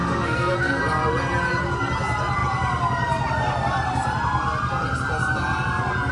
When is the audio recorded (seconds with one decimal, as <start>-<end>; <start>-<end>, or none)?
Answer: 0.8-6.1